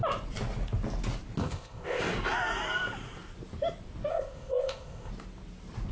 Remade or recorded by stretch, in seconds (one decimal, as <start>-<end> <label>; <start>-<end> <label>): 0.0-1.4 recorded; 1.4-2.0 remade; 2.0-4.1 recorded; 4.1-5.1 remade; 5.1-5.9 recorded